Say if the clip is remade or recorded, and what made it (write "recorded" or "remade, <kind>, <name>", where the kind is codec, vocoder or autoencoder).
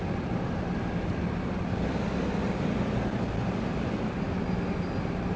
recorded